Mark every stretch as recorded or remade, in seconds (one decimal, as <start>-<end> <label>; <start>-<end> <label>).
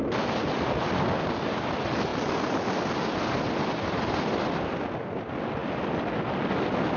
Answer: 0.0-7.0 recorded